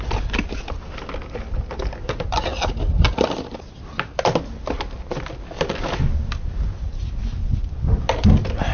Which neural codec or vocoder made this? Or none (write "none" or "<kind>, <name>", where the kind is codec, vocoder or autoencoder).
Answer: none